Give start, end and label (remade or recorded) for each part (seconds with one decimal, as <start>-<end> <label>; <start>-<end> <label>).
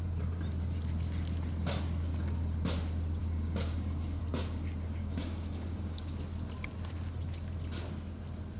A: 0.0-3.2 recorded; 3.2-4.2 remade; 4.2-5.0 recorded; 5.0-6.2 remade; 6.2-8.6 recorded